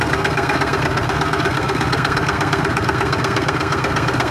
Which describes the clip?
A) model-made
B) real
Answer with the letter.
A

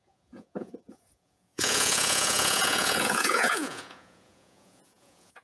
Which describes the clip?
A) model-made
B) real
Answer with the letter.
A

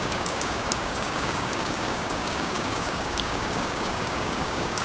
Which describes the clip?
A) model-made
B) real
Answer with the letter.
A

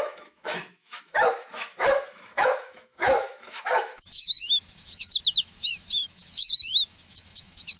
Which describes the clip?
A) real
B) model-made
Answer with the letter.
B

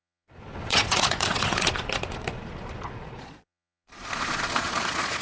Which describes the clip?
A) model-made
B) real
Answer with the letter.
A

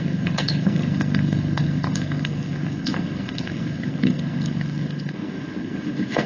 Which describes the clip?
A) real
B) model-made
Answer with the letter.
B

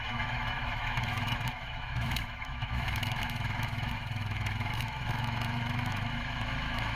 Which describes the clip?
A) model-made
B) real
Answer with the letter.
A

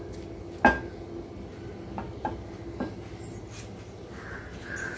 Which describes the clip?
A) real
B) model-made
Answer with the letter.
A